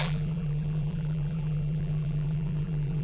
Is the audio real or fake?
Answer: fake